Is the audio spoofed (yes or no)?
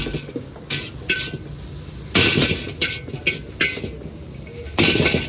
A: no